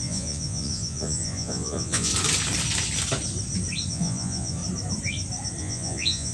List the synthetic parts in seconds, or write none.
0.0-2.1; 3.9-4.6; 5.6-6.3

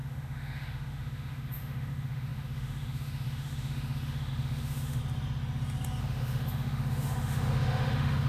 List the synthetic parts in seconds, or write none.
0.0-5.0; 6.0-8.3

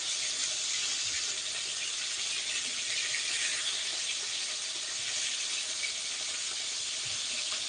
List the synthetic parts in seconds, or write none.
0.0-0.4; 3.0-3.9; 6.8-7.7

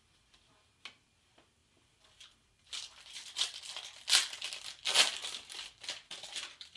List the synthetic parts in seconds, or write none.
1.6-3.6; 5.2-6.8

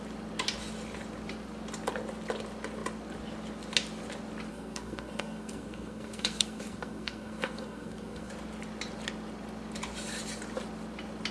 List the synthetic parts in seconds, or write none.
4.5-8.3

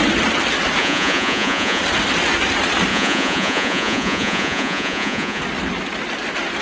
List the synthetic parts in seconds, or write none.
0.8-1.8; 2.9-5.4

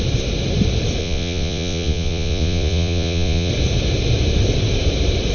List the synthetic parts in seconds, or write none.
1.0-3.5